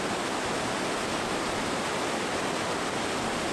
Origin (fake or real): real